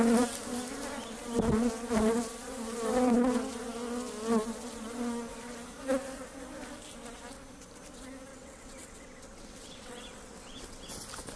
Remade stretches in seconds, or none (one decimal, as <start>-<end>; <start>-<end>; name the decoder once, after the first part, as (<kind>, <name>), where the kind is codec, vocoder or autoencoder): 8.3-10.9 (vocoder, WaveNeXt)